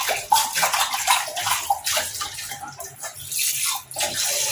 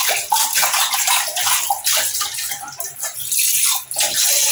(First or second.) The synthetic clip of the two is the second